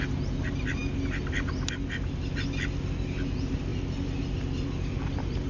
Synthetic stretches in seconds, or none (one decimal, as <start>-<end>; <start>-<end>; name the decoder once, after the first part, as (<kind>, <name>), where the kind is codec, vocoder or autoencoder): 3.7-5.5 (vocoder, BigVGAN v2)